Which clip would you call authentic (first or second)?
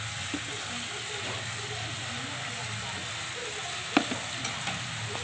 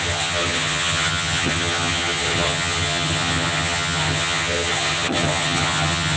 first